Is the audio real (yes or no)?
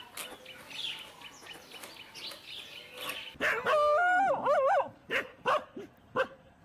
yes